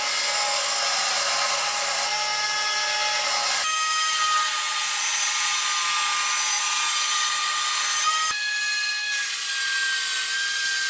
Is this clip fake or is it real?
real